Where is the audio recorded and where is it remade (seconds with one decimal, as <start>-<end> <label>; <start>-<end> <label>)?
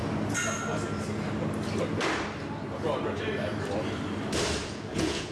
0.0-4.6 recorded; 4.6-5.3 remade